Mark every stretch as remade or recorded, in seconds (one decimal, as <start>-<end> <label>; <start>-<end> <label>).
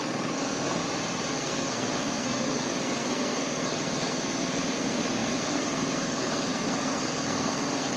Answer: 0.0-0.8 remade; 0.8-1.3 recorded; 1.3-8.0 remade